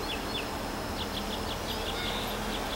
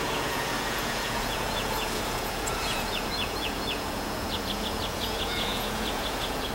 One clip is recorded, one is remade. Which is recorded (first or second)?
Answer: first